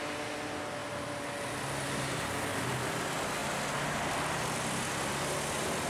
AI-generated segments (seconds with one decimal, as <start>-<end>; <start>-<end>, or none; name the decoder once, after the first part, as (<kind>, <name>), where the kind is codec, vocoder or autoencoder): none